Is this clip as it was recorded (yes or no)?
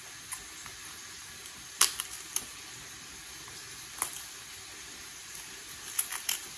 yes